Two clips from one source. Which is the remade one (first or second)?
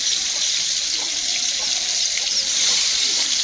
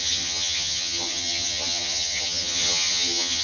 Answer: second